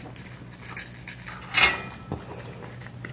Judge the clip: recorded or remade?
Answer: recorded